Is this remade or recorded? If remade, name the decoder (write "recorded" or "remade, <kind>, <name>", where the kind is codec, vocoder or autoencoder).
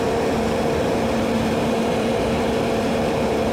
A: remade, vocoder, BigVGAN v2